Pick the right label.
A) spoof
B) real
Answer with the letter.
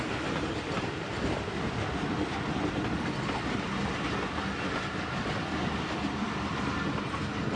B